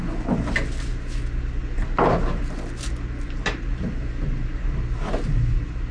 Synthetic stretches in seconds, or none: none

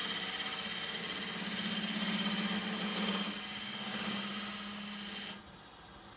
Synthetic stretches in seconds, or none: none

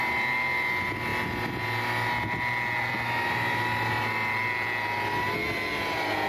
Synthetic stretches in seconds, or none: none